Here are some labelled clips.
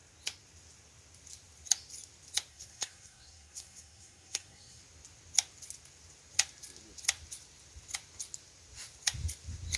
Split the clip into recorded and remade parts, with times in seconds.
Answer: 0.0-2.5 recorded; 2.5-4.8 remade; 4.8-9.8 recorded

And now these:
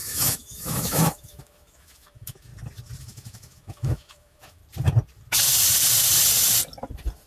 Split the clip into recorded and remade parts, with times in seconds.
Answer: 0.0-2.5 remade; 2.5-3.0 recorded; 3.0-4.6 remade; 4.6-7.3 recorded